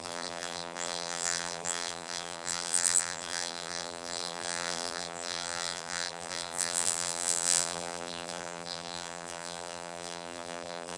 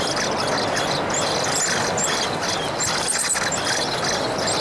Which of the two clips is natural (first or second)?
second